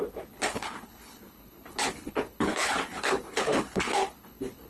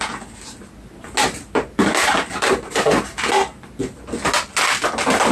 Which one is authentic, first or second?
second